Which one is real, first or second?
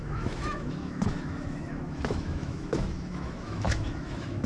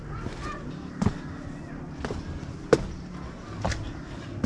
second